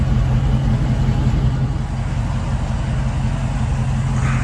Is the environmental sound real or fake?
real